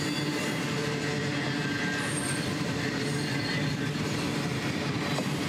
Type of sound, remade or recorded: remade